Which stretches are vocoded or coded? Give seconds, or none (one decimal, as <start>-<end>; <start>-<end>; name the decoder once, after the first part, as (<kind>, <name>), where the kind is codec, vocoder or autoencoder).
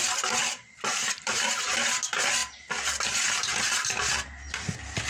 0.4-1.7 (vocoder, BigVGAN v2)